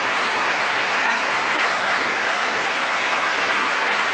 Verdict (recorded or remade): remade